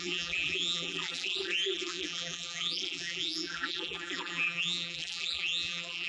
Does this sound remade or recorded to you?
remade